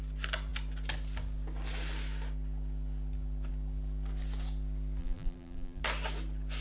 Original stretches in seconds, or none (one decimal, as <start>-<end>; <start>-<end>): 0.0-5.0; 5.8-6.6